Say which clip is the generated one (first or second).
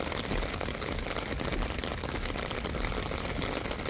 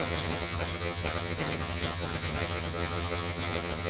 second